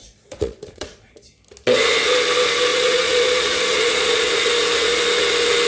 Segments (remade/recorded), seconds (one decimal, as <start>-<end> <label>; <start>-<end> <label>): 0.0-1.3 remade; 1.3-2.7 recorded; 2.7-4.3 remade; 4.3-5.7 recorded